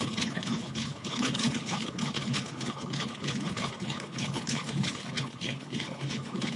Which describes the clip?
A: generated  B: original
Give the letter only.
A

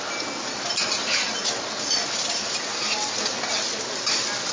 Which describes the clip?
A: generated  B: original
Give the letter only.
B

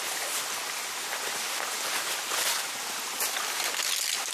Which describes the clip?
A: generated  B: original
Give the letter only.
B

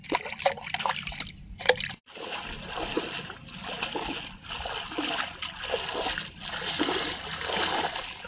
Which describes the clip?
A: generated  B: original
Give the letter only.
B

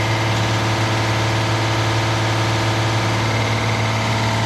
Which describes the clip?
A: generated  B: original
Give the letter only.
B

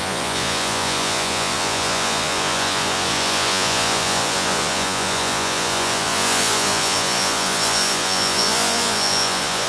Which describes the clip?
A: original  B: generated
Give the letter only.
B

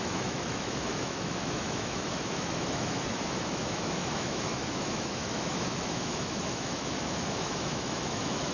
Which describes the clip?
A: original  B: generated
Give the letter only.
B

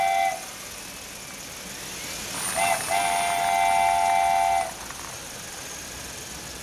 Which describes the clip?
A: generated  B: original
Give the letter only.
B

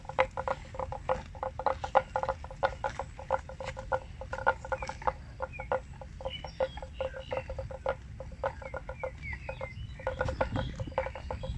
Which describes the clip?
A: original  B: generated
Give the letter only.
A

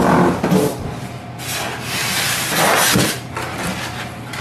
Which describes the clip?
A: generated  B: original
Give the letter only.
B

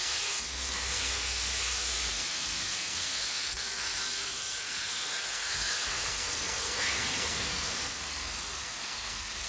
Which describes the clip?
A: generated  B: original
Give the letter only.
A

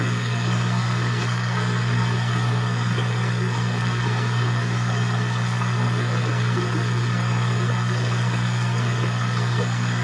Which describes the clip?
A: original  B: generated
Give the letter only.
B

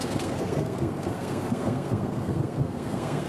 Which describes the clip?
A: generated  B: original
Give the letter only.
A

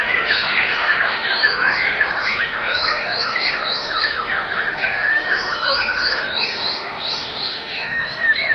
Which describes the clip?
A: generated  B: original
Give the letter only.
A